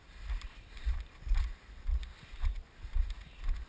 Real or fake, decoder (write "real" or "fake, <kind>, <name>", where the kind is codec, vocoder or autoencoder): real